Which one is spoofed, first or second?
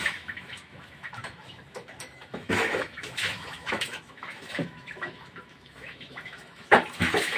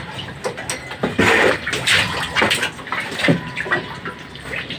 first